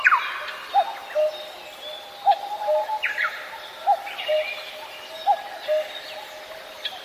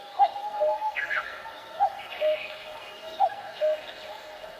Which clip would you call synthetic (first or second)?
second